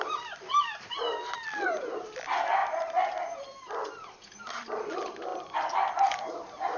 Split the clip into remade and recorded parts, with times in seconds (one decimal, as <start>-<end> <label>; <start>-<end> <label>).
0.0-5.3 remade; 5.3-6.3 recorded; 6.3-6.8 remade